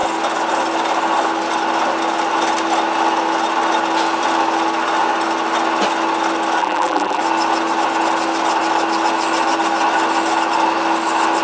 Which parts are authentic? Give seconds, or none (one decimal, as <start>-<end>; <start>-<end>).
0.0-6.6; 7.2-11.4